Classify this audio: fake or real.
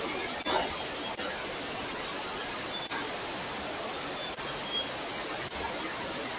real